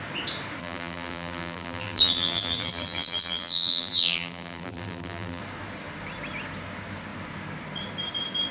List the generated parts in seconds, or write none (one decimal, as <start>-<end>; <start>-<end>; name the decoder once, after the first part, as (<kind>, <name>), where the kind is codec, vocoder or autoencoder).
0.6-5.4 (vocoder, BigVGAN v2)